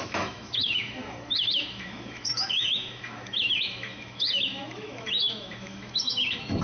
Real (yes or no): no